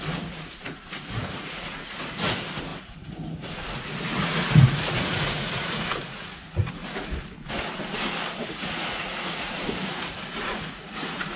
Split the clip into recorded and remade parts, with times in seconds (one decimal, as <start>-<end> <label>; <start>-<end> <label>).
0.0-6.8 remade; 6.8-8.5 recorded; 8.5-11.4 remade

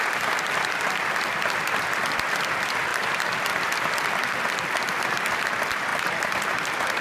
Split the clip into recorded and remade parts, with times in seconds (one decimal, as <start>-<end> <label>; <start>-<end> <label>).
0.0-7.0 recorded

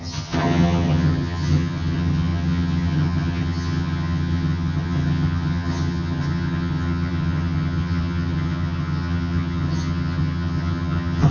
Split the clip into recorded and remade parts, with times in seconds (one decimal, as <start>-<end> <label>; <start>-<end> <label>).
0.0-11.3 remade